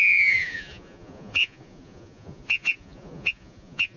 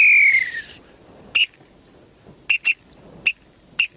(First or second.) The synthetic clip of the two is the first